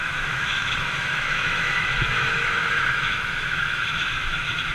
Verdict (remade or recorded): remade